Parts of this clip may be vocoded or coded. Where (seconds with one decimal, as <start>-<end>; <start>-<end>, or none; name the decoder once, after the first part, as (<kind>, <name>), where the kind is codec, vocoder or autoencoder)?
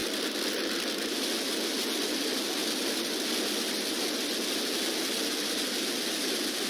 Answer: none